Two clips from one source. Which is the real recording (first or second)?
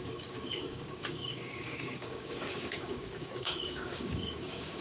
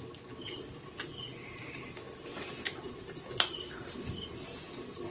second